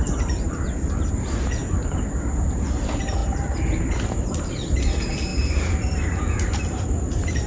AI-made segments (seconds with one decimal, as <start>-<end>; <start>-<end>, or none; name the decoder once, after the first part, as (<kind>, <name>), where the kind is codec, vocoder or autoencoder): 0.0-1.6 (vocoder, BigVGAN v2); 2.5-7.5